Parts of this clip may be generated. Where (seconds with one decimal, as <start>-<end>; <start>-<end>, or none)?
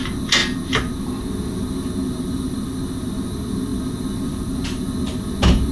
none